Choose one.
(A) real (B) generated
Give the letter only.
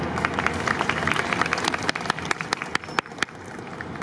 A